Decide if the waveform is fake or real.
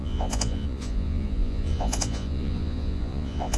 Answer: fake